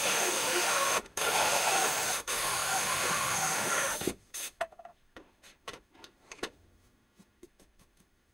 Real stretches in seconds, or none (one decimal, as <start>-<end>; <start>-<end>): none